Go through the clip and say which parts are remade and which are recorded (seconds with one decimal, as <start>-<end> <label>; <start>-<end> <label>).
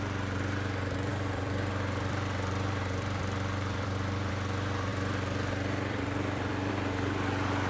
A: 0.0-1.1 recorded; 1.1-4.3 remade; 4.3-4.9 recorded; 4.9-6.7 remade; 6.7-7.7 recorded